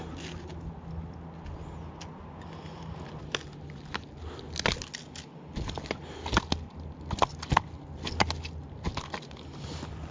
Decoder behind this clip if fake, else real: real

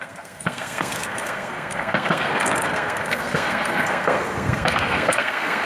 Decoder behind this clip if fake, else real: fake, codec, SNAC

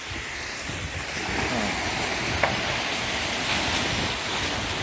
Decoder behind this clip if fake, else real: real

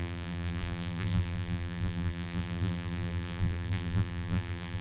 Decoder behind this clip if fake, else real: fake, vocoder, BigVGAN v2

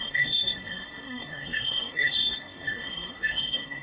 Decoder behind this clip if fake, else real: fake, codec, SNAC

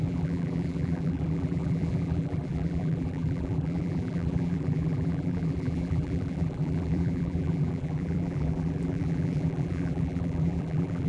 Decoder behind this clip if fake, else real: fake, vocoder, BigVGAN v2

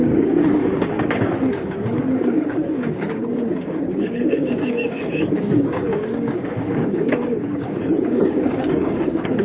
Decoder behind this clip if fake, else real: fake, codec, DAC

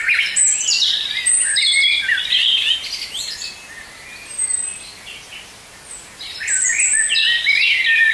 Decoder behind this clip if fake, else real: real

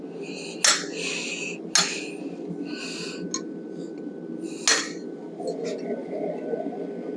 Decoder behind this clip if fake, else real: real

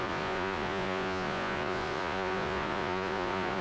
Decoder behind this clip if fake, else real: fake, vocoder, Vocos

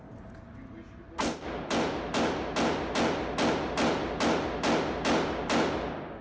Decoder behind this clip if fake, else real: real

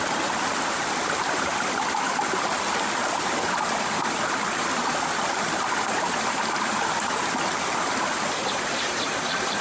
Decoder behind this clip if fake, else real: real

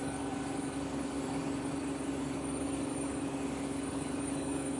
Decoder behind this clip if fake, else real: fake, codec, DAC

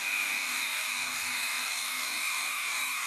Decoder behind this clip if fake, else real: fake, codec, DAC